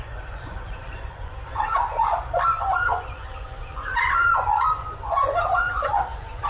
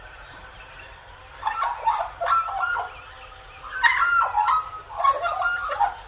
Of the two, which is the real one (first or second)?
second